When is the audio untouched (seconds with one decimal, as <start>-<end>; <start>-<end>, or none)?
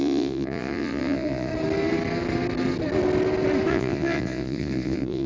1.5-3.7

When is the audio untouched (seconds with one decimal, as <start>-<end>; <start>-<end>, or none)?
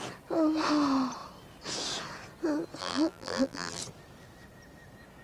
0.0-2.8; 3.8-5.2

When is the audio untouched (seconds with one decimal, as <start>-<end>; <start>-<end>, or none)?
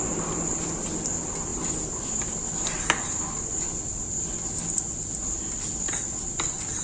0.0-6.8